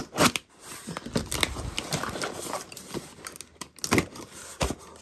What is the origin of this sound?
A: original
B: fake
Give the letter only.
A